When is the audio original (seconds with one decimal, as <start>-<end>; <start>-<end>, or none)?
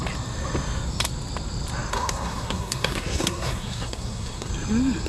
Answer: 0.0-1.9; 4.5-5.1